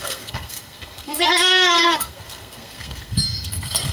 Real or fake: fake